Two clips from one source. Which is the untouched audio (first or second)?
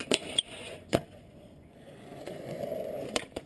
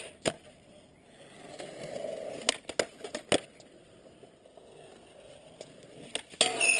second